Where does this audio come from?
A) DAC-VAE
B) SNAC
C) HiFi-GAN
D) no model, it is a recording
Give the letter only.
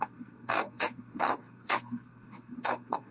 B